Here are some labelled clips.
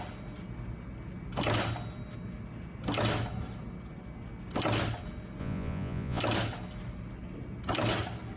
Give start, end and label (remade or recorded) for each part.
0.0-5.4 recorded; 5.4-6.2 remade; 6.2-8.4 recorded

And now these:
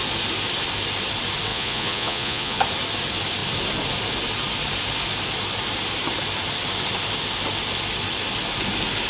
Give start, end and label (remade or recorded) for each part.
0.0-1.5 recorded; 1.5-2.6 remade; 2.6-9.1 recorded

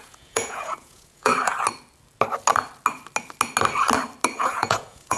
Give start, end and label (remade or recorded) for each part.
0.0-1.3 remade; 1.3-4.4 recorded; 4.4-5.2 remade

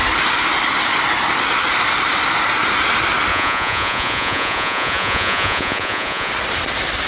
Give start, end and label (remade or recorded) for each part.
0.0-3.3 recorded; 3.3-6.3 remade; 6.3-7.1 recorded

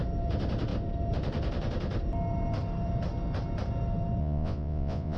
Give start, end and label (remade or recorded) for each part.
0.0-4.2 recorded; 4.2-5.2 remade

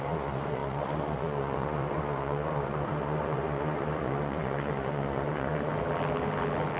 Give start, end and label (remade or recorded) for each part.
0.0-5.7 remade; 5.7-6.8 recorded